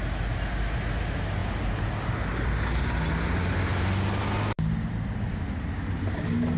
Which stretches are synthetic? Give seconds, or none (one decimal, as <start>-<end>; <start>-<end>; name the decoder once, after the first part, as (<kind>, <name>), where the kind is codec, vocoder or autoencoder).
none